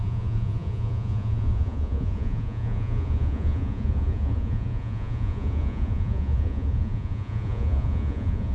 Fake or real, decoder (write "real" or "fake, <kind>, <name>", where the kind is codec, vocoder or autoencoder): fake, vocoder, Vocos